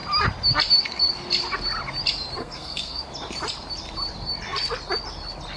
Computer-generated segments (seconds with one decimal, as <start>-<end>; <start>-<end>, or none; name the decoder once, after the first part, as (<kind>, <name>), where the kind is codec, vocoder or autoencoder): 2.4-3.0 (codec, SNAC)